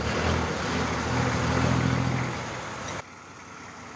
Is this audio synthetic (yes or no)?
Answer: no